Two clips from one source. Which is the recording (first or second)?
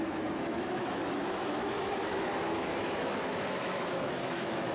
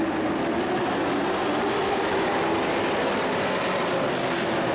second